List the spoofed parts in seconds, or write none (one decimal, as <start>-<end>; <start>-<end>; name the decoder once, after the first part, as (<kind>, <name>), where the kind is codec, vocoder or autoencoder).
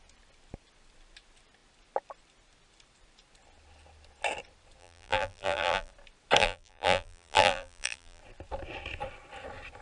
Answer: 4.8-5.9 (vocoder, BigVGAN v2); 6.4-8.2